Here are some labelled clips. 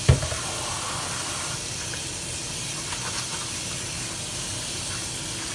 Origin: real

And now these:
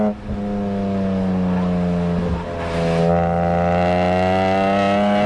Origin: real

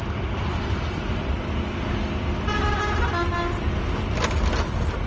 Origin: real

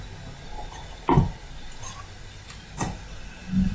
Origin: real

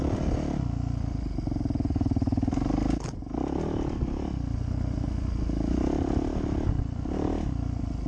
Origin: real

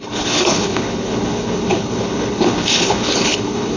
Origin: fake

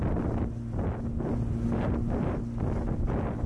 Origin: real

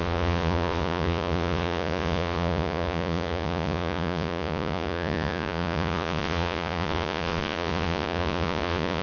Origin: fake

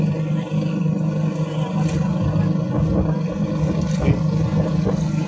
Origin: real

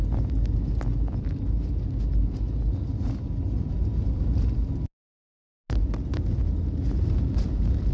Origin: real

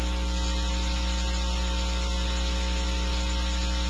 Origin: real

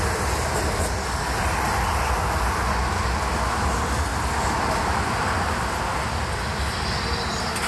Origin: real